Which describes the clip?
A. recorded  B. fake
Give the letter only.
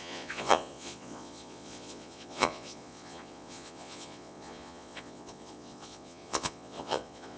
B